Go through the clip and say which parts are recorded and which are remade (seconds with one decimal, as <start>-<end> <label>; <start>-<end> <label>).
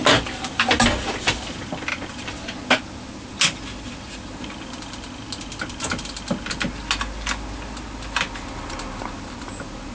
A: 0.0-9.9 recorded